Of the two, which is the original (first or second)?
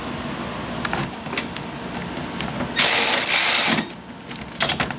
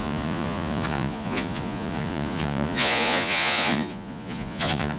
first